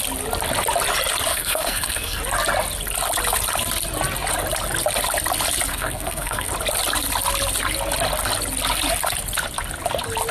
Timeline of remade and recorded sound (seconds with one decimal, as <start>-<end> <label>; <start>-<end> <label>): 0.0-1.3 recorded; 1.3-2.2 remade; 2.2-5.7 recorded; 5.7-6.5 remade; 6.5-10.3 recorded